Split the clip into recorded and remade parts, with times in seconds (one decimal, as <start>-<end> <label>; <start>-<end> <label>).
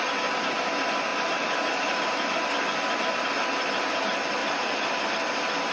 0.0-1.1 recorded; 1.1-2.1 remade; 2.1-4.4 recorded; 4.4-5.0 remade; 5.0-5.7 recorded